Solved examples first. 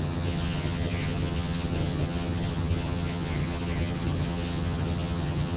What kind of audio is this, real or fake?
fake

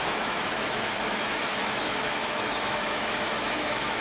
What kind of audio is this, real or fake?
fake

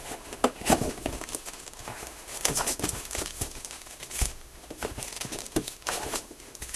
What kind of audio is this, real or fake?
fake